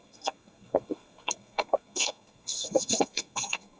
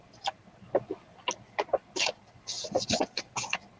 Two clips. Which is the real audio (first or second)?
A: second